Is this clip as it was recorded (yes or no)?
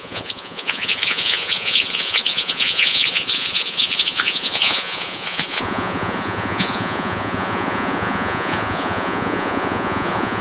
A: no